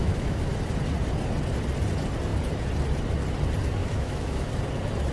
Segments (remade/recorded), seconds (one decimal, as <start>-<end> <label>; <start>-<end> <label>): 0.0-0.5 remade; 0.5-3.8 recorded; 3.8-4.5 remade; 4.5-5.1 recorded